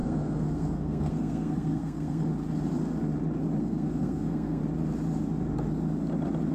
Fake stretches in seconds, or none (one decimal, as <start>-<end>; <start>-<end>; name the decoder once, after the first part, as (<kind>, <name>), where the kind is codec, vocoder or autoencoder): 0.0-2.3 (codec, SNAC); 3.6-4.6

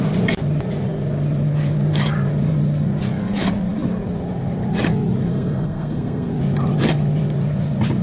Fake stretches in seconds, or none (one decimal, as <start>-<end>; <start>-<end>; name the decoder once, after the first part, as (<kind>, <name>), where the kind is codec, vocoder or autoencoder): 5.3-6.3 (codec, SNAC)

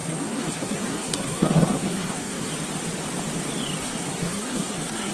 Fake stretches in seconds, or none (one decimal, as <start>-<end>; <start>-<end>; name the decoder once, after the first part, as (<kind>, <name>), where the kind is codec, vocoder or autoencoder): 0.0-2.5 (codec, SNAC); 3.8-5.1

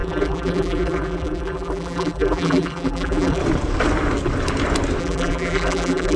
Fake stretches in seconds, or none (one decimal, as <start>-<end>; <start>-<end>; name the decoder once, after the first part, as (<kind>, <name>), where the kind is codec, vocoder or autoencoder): 0.0-3.4 (vocoder, BigVGAN v2); 5.0-6.2